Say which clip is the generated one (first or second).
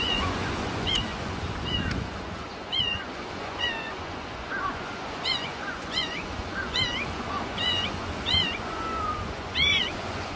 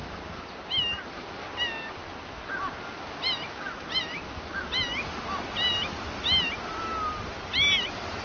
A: first